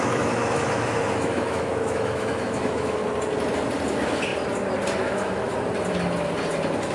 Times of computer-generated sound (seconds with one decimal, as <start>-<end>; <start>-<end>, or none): 0.0-3.0; 3.9-4.3; 5.0-5.5